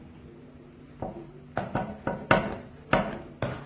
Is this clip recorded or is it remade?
recorded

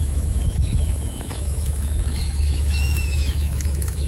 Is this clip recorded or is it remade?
remade